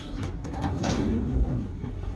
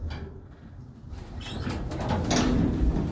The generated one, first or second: first